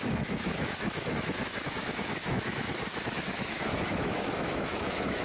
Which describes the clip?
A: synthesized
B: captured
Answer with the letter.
A